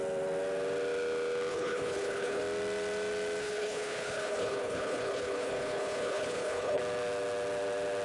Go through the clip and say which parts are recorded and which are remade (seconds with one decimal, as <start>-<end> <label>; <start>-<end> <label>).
0.0-1.5 recorded; 1.5-2.4 remade; 2.4-3.4 recorded; 3.4-6.8 remade; 6.8-8.0 recorded